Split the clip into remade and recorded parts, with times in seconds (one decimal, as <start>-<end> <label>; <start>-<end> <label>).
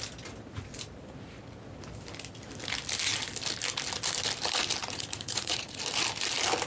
0.0-4.8 recorded; 4.8-5.8 remade; 5.8-6.7 recorded